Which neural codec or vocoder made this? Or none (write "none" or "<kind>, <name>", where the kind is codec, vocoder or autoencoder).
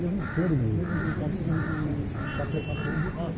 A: vocoder, BigVGAN v2